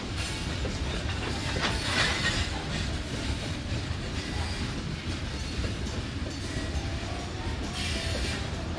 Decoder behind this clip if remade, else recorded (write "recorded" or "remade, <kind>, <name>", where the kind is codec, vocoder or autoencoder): remade, vocoder, BigVGAN v2